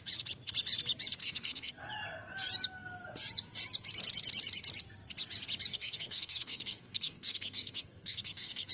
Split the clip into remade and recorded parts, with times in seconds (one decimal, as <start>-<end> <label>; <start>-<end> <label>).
0.0-1.2 recorded; 1.2-1.7 remade; 1.7-5.7 recorded; 5.7-8.7 remade